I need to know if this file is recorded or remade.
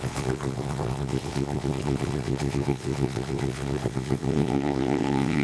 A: remade